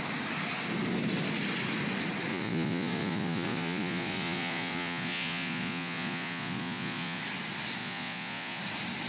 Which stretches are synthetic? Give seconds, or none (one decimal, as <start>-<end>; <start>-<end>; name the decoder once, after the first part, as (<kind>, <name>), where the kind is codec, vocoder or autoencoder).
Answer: 2.3-7.2 (vocoder, Vocos); 7.8-8.6